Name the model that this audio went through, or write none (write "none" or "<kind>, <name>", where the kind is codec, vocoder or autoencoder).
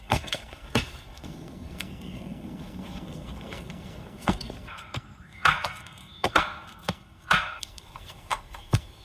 codec, SNAC